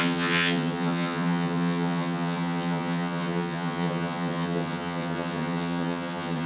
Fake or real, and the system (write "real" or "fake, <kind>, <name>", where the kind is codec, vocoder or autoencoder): fake, vocoder, HiFi-GAN